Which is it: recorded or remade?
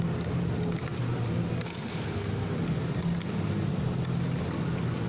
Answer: recorded